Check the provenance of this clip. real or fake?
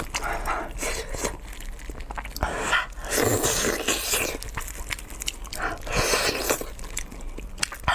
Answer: real